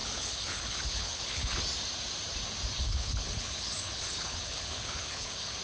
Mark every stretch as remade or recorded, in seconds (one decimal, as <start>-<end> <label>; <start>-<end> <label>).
0.0-1.6 remade; 1.6-2.8 recorded; 2.8-5.6 remade